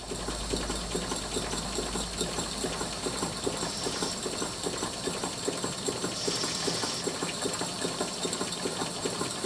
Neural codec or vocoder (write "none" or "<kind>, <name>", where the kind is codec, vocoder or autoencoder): none